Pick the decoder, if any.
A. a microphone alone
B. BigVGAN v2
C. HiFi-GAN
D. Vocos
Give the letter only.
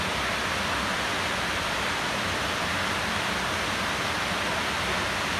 A